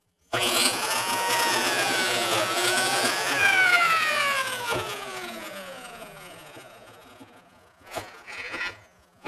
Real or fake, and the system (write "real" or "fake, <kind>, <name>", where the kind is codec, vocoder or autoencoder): fake, vocoder, Vocos